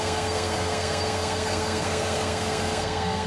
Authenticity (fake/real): fake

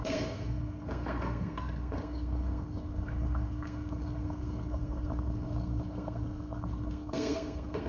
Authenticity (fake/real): fake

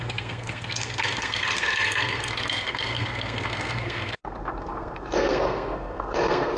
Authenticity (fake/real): fake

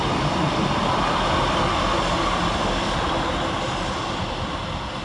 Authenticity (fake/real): real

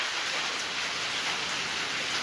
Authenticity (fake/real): real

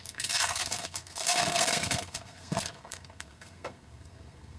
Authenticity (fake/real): fake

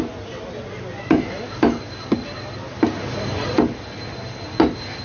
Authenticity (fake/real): real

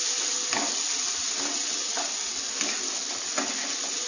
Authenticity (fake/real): real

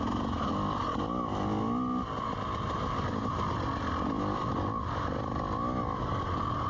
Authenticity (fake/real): real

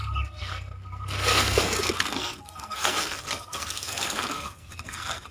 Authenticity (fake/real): fake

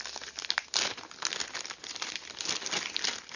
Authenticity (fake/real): real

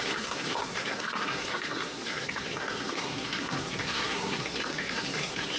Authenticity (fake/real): fake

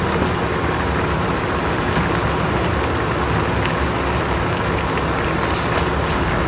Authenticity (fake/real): real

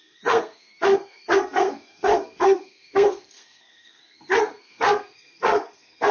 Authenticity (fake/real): fake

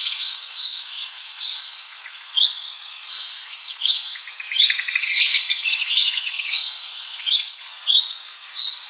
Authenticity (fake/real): fake